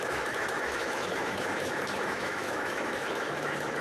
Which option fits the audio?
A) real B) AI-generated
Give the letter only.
B